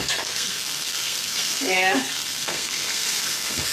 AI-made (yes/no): yes